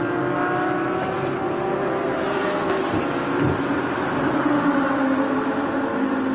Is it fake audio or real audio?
real